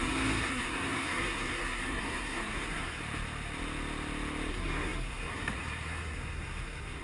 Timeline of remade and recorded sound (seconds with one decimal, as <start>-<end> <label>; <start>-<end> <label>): 0.0-3.0 remade; 3.0-4.5 recorded; 4.5-7.0 remade